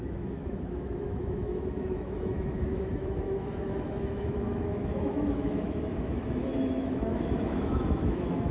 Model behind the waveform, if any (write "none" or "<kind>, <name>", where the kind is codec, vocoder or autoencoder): autoencoder, DAC-VAE